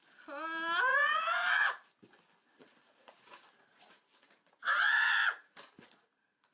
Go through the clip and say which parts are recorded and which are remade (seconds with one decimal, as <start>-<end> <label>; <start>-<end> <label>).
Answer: 0.0-0.9 recorded; 0.9-1.9 remade; 1.9-2.6 recorded; 2.6-6.5 remade